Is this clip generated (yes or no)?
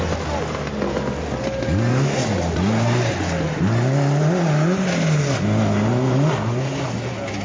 no